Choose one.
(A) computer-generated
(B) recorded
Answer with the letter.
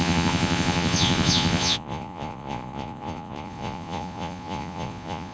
A